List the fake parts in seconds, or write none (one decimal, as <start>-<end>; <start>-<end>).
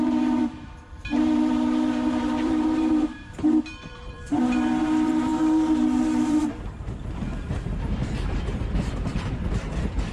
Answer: 0.0-8.0; 9.3-10.1